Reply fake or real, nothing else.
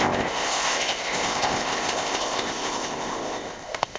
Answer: fake